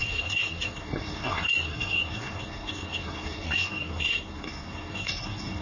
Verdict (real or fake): fake